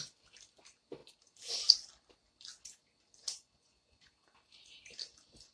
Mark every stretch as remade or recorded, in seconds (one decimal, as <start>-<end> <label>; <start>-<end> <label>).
0.0-3.2 recorded; 3.2-4.1 remade; 4.1-5.5 recorded